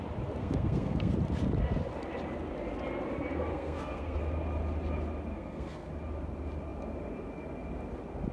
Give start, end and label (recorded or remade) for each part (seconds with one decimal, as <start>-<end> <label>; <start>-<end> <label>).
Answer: 0.0-0.4 recorded; 0.4-1.1 remade; 1.1-3.5 recorded; 3.5-4.2 remade; 4.2-5.3 recorded; 5.3-5.9 remade; 5.9-8.3 recorded